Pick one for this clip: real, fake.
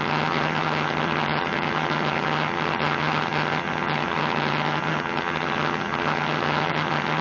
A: fake